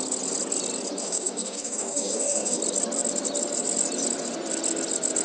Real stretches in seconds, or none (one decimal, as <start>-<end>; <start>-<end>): 0.0-1.0; 2.6-5.2